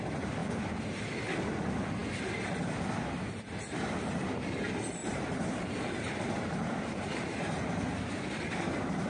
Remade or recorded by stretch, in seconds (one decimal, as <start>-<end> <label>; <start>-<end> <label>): 0.0-5.0 recorded; 5.0-7.6 remade; 7.6-9.1 recorded